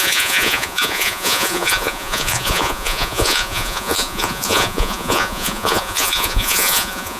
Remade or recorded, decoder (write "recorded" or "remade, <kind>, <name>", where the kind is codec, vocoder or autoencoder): remade, vocoder, Vocos